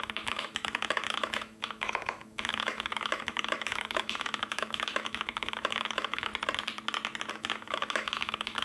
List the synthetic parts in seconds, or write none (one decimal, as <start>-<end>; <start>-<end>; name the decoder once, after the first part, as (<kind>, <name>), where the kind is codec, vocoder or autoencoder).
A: 0.0-6.3 (autoencoder, DAC-VAE); 7.3-8.6